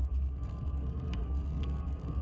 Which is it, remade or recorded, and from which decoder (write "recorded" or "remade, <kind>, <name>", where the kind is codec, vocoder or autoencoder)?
remade, codec, SNAC